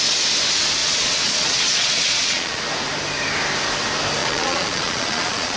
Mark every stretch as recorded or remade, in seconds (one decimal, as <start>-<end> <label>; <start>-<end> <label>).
0.0-0.8 recorded; 0.8-2.6 remade; 2.6-4.2 recorded; 4.2-5.6 remade